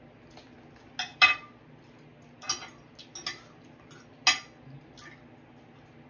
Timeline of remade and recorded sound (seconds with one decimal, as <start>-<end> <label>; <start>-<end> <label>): 0.0-6.1 recorded